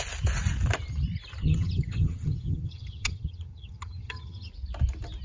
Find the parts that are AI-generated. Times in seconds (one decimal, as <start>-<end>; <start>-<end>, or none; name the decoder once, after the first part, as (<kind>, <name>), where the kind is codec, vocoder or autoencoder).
1.4-4.5 (vocoder, HiFi-GAN)